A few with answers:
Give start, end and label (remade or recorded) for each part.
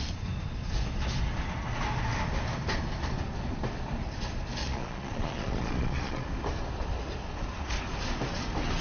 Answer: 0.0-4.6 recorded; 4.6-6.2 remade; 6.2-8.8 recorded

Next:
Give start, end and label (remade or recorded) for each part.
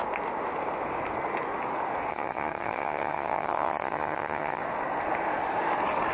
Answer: 0.0-2.1 recorded; 2.1-4.6 remade; 4.6-6.1 recorded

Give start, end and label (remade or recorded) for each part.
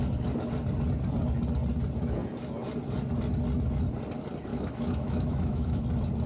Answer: 0.0-4.5 recorded; 4.5-5.8 remade; 5.8-6.3 recorded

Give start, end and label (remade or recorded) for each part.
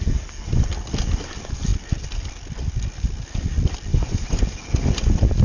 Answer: 0.0-3.9 recorded; 3.9-4.4 remade; 4.4-5.4 recorded